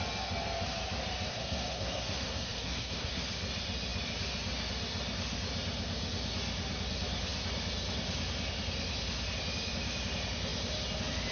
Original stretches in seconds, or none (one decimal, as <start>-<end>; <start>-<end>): 0.0-1.3; 3.2-11.3